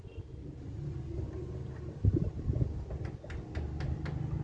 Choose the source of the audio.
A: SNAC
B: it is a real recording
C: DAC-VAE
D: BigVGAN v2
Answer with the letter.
B